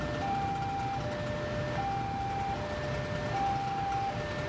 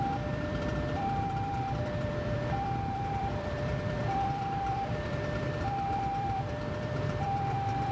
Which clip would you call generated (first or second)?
second